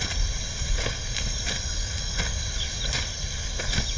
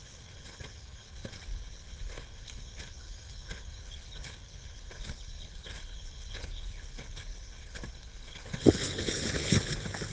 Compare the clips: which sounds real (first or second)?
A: first